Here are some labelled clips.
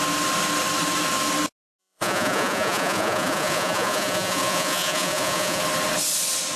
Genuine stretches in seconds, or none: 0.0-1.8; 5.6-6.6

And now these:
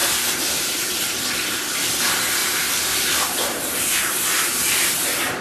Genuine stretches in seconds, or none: 0.0-2.4; 4.1-5.4

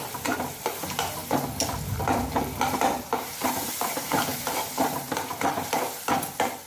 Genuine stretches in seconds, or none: none

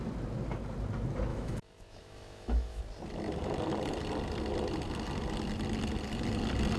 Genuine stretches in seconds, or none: 0.0-1.3; 2.8-6.8

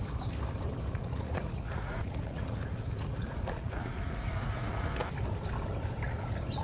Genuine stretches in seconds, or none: 0.0-0.9; 4.9-6.6